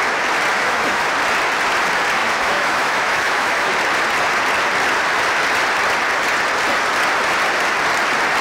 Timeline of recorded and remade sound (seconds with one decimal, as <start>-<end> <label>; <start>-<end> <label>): 0.0-0.5 recorded; 0.5-1.1 remade; 1.1-2.2 recorded; 2.2-3.7 remade; 3.7-8.4 recorded